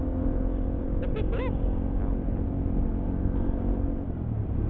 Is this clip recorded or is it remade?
recorded